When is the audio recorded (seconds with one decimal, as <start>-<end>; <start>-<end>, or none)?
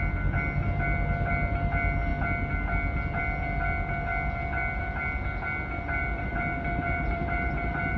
0.0-6.0